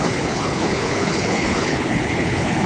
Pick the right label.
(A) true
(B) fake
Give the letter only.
B